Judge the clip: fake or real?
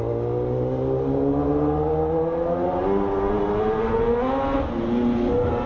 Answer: real